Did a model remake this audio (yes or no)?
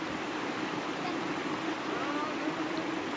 no